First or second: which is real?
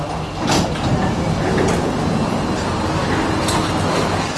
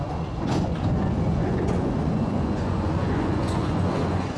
first